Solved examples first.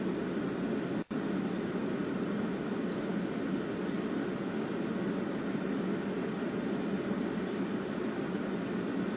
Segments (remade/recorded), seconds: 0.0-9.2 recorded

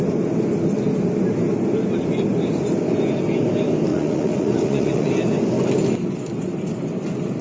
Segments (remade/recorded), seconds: 0.0-3.9 recorded; 3.9-5.1 remade; 5.1-7.4 recorded

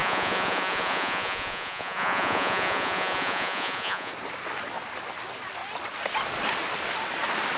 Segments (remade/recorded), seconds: 0.0-4.1 remade; 4.1-7.6 recorded

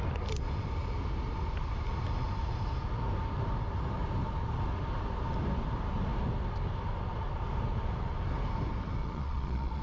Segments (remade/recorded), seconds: 0.0-9.0 recorded; 9.0-9.8 remade

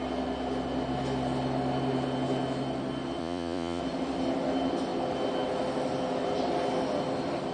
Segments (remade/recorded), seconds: 0.0-3.2 recorded; 3.2-3.8 remade; 3.8-7.5 recorded